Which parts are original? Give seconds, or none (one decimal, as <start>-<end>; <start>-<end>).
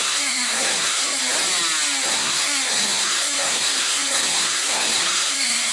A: 1.2-2.1